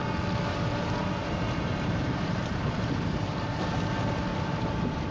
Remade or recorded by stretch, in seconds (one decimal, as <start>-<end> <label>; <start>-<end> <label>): 0.0-0.5 recorded; 0.5-3.6 remade; 3.6-4.3 recorded; 4.3-5.1 remade